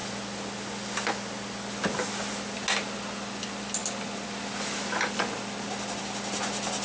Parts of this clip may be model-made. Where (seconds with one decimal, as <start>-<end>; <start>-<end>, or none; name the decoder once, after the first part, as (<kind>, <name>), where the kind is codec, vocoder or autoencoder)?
none